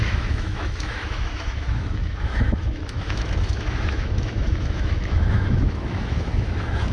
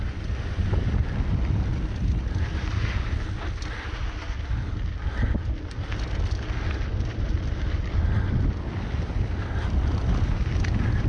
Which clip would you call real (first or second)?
second